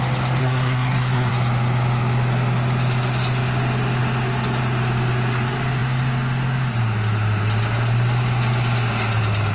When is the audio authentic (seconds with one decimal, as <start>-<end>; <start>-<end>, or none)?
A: 0.0-0.4; 1.3-9.5